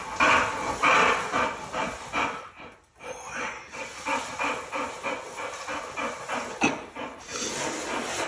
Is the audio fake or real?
real